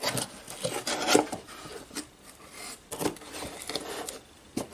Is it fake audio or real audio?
real